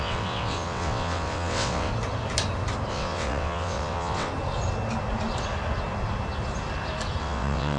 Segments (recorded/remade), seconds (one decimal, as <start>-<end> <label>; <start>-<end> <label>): 0.0-1.9 remade; 1.9-2.9 recorded; 2.9-4.3 remade; 4.3-7.2 recorded; 7.2-7.8 remade

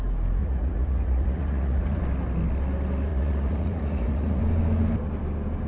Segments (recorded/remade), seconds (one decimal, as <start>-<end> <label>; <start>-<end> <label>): 0.0-0.4 recorded; 0.4-2.0 remade; 2.0-3.1 recorded; 3.1-4.4 remade; 4.4-5.7 recorded

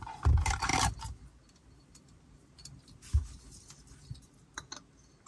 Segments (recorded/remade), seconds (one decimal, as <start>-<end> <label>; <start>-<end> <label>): 0.0-5.3 recorded

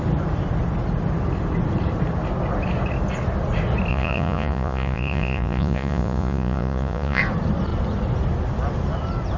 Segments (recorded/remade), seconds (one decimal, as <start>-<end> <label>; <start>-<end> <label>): 0.0-3.9 recorded; 3.9-7.2 remade; 7.2-9.4 recorded

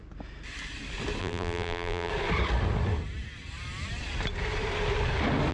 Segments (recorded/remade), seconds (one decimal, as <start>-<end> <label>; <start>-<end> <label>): 0.0-1.2 recorded; 1.2-2.1 remade; 2.1-5.5 recorded

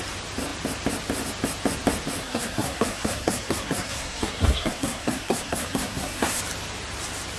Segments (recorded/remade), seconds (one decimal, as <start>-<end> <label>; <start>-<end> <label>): 0.0-2.2 recorded; 2.2-6.4 remade; 6.4-7.4 recorded

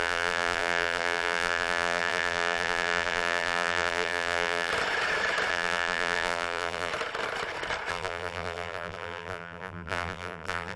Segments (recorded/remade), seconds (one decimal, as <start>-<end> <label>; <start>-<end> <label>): 0.0-4.7 remade; 4.7-5.5 recorded; 5.5-6.9 remade; 6.9-7.9 recorded; 7.9-10.8 remade

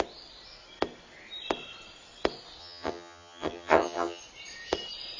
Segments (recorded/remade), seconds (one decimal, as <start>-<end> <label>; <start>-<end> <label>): 0.0-2.6 recorded; 2.6-4.2 remade; 4.2-5.2 recorded